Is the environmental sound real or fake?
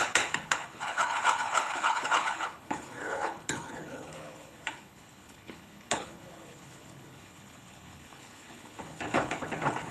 fake